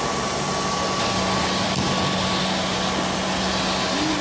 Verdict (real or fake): real